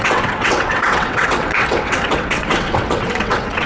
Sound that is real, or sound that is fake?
fake